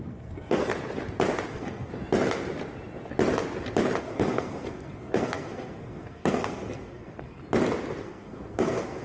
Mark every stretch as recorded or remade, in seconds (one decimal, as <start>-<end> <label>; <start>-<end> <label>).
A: 0.0-0.7 remade; 0.7-1.5 recorded; 1.5-1.9 remade; 1.9-4.0 recorded; 4.0-7.4 remade; 7.4-8.0 recorded; 8.0-9.0 remade